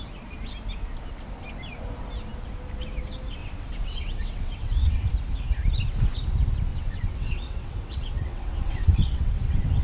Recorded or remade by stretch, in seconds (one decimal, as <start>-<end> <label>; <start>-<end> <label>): 0.0-3.4 recorded; 3.4-5.1 remade; 5.1-6.7 recorded; 6.7-9.8 remade